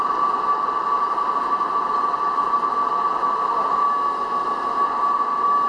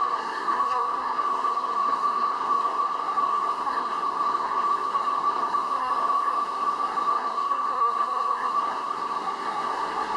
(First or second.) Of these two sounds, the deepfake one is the second